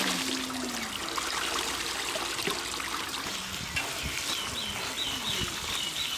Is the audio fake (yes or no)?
no